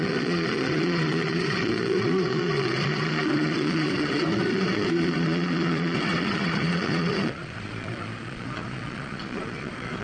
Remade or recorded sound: remade